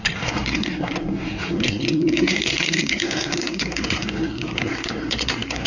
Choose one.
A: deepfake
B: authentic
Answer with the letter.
A